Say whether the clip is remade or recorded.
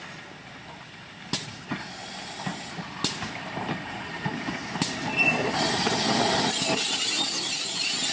recorded